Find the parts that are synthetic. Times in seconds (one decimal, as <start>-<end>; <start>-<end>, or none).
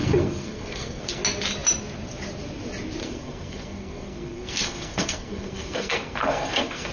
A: 0.0-1.2; 3.0-6.9